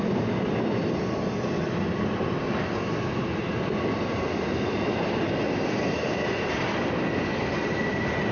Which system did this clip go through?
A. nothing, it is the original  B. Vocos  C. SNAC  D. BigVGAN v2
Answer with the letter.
A